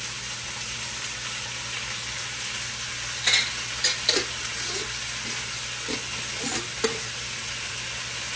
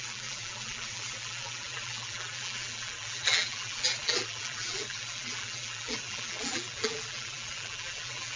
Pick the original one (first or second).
first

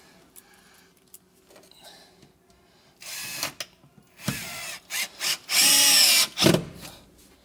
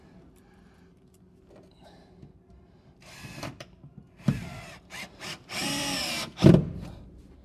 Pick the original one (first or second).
first